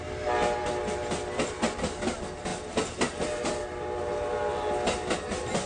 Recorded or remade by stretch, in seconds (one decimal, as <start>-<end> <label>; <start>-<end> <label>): 0.0-5.7 recorded